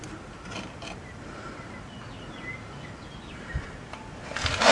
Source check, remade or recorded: recorded